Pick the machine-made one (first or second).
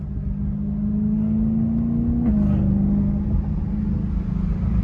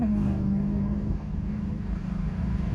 second